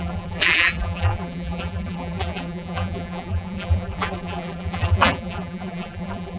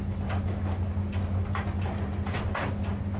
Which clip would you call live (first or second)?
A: second